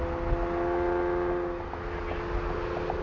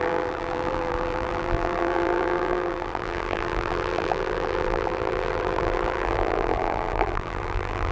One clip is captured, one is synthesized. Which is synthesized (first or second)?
second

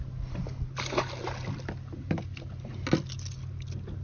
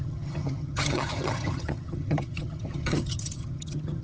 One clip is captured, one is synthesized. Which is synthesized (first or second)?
second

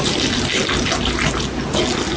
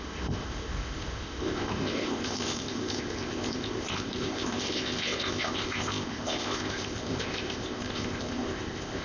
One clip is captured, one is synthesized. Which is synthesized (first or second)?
second